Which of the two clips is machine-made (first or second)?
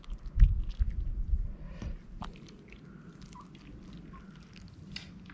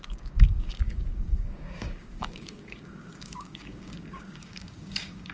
second